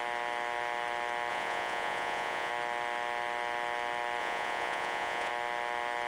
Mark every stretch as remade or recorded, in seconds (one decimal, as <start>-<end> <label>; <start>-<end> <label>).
0.0-1.3 recorded; 1.3-2.5 remade; 2.5-4.2 recorded; 4.2-5.3 remade; 5.3-6.1 recorded